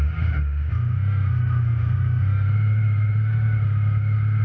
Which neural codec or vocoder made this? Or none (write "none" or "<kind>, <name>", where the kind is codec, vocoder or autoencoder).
autoencoder, DAC-VAE